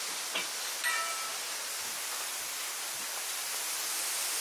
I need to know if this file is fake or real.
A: real